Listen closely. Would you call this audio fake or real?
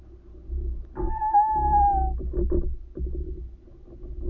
real